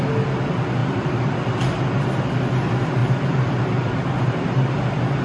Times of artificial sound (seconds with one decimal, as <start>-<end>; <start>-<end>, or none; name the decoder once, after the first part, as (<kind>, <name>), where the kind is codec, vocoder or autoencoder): 0.8-2.2 (vocoder, BigVGAN v2); 3.0-5.2